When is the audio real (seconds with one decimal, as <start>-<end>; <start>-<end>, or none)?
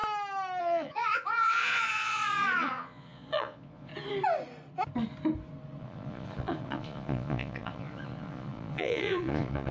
0.0-0.6; 3.9-5.8